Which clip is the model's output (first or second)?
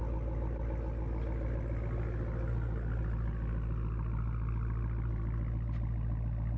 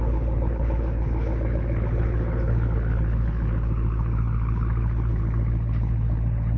second